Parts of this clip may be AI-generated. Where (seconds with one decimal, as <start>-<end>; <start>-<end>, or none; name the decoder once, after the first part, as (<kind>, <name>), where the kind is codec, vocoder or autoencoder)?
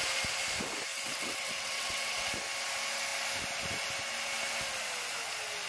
0.9-2.3 (vocoder, WaveNeXt)